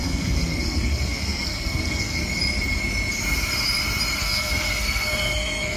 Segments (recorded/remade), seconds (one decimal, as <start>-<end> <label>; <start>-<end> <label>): 0.0-2.2 remade; 2.2-4.2 recorded; 4.2-5.8 remade